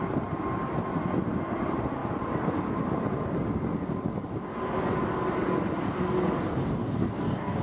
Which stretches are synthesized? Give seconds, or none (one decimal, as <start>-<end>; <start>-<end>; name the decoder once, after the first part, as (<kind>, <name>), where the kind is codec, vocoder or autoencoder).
6.7-7.6 (codec, DAC)